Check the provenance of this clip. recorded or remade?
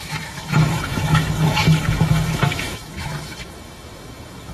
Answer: remade